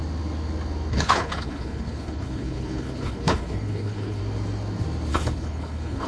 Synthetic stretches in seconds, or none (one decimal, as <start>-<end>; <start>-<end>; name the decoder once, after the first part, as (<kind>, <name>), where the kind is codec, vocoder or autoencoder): 0.9-4.2 (codec, HILCodec); 5.1-6.1